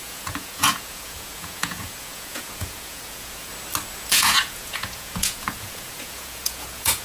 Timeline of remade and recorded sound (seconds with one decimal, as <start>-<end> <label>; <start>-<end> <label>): 0.0-3.5 remade; 3.5-4.1 recorded; 4.1-7.0 remade